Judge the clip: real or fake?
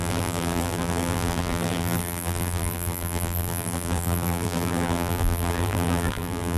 fake